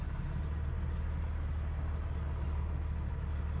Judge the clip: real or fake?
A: real